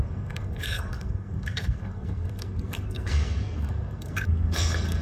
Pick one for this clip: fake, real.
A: fake